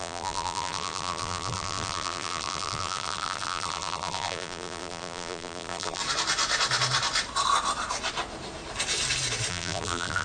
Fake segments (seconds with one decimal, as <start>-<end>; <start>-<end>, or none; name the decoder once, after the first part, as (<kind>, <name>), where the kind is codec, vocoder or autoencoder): 0.0-6.0 (vocoder, BigVGAN v2); 9.5-10.2